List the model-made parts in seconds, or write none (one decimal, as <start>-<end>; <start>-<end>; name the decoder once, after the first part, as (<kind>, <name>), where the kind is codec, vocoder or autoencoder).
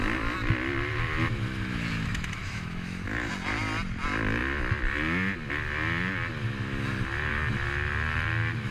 2.1-3.3 (autoencoder, DAC-VAE)